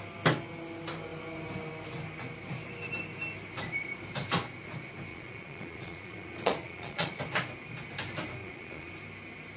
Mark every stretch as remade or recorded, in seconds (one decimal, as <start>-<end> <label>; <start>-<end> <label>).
0.0-5.1 recorded; 5.1-7.2 remade; 7.2-8.4 recorded; 8.4-8.9 remade; 8.9-9.6 recorded